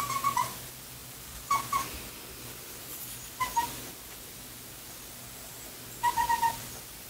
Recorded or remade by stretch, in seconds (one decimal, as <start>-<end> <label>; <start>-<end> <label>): 0.0-7.1 recorded